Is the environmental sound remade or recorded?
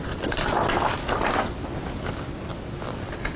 recorded